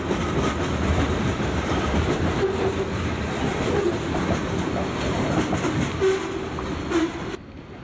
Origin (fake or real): real